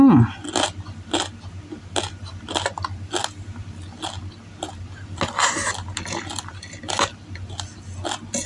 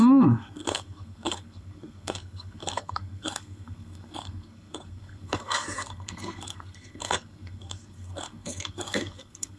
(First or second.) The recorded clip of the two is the first